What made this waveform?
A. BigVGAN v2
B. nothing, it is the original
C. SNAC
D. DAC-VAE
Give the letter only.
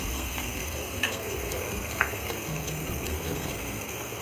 C